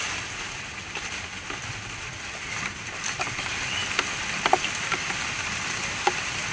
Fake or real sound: fake